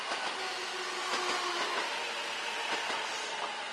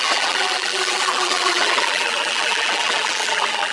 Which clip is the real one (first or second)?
first